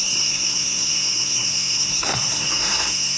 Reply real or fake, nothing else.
fake